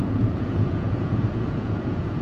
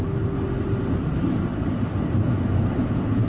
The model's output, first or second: first